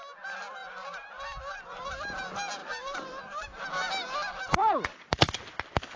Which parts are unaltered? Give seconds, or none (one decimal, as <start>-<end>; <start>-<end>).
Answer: 0.0-0.6; 1.9-2.6; 3.2-4.6; 5.5-6.0